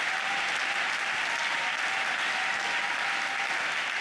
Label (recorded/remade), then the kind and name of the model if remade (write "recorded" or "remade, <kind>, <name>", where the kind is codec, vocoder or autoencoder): recorded